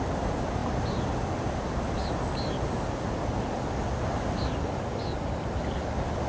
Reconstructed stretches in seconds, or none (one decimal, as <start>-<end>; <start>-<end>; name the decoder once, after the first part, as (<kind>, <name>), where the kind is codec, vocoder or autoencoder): none